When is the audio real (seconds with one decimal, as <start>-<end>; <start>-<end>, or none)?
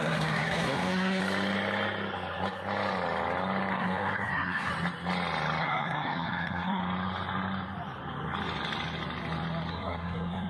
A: 1.2-3.7; 4.7-5.6; 6.8-9.7